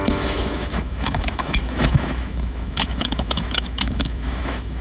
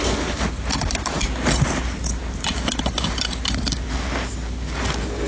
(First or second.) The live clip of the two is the second